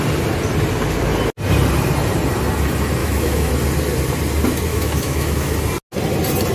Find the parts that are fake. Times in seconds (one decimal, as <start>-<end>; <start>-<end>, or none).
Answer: 3.0-3.5; 4.7-5.5